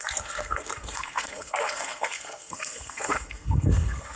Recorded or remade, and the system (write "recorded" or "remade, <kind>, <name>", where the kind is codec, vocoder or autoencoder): remade, codec, SNAC